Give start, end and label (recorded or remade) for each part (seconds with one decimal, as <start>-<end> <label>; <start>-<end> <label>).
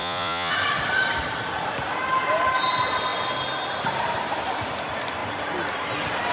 0.0-0.5 remade; 0.5-6.3 recorded